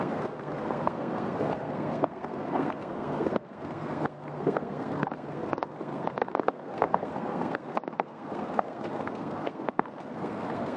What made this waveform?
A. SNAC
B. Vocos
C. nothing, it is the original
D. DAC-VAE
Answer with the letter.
A